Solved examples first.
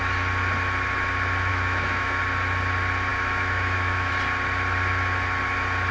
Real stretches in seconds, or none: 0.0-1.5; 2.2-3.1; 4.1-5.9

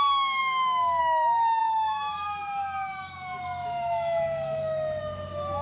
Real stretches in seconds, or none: none